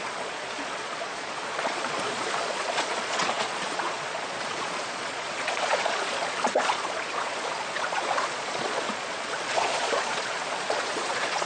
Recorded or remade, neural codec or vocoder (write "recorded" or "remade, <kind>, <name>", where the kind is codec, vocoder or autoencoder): remade, vocoder, Vocos